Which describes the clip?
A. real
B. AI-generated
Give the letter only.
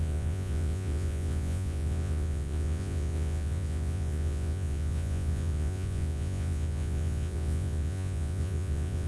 B